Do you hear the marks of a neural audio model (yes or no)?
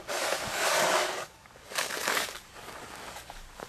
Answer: yes